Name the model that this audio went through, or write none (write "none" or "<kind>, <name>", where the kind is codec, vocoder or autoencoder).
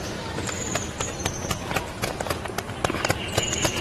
vocoder, BigVGAN v2